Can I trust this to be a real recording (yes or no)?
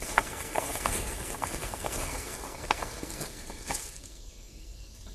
no